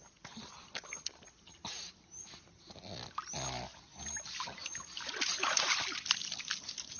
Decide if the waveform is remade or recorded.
recorded